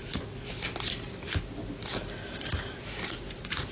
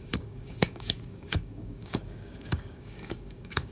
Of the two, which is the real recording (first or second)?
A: first